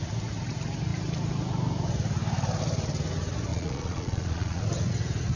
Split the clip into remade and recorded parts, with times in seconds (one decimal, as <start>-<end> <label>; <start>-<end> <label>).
0.0-3.5 recorded; 3.5-4.6 remade; 4.6-5.4 recorded